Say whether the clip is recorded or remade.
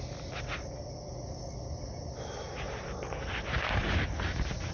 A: recorded